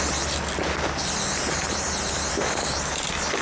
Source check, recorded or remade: recorded